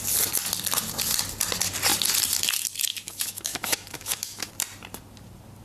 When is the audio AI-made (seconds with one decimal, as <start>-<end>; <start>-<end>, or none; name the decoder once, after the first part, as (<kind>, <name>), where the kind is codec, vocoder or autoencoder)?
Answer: 2.9-4.5 (autoencoder, DAC-VAE)